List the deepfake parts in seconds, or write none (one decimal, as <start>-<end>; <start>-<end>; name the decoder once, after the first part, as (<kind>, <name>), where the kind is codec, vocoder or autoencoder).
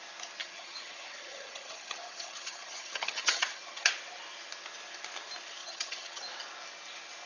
0.4-3.9 (vocoder, HiFi-GAN); 5.6-6.2